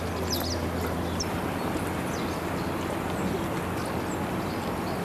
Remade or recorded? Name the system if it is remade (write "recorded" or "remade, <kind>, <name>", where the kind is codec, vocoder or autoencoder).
recorded